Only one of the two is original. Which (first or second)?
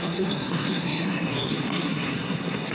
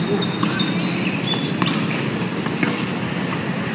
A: second